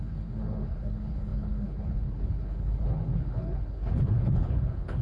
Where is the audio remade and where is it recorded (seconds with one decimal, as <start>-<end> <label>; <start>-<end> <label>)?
0.0-5.0 remade